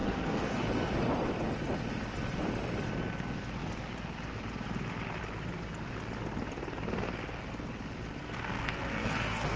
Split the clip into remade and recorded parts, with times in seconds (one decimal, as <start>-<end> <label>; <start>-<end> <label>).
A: 0.0-0.6 remade; 0.6-8.2 recorded; 8.2-9.6 remade